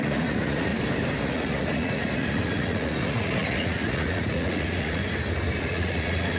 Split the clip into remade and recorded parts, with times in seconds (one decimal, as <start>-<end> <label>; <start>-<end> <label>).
0.0-0.7 remade; 0.7-1.2 recorded; 1.2-5.0 remade; 5.0-5.6 recorded; 5.6-6.4 remade